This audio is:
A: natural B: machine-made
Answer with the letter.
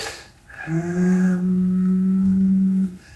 B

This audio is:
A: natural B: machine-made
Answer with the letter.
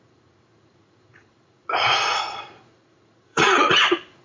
B